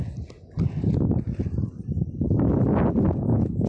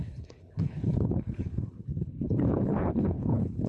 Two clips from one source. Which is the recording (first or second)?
first